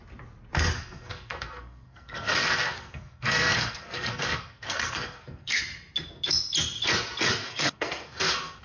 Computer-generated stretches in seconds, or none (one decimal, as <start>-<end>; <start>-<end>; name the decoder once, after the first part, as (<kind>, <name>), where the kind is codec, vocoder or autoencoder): 0.8-5.6 (codec, SNAC); 7.4-8.6